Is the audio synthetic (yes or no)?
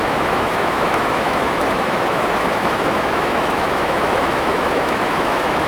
yes